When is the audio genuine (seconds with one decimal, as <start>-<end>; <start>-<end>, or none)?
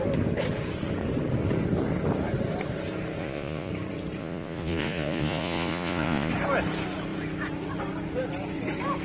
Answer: 0.0-3.2; 3.7-4.2; 6.3-9.0